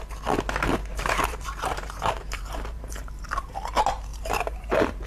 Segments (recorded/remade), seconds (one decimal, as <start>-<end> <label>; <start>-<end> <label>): 0.0-0.9 recorded; 0.9-3.3 remade; 3.3-4.1 recorded; 4.1-5.1 remade